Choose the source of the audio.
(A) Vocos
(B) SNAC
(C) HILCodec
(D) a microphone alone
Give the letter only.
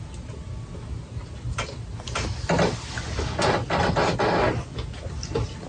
D